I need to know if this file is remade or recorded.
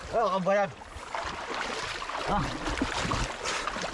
recorded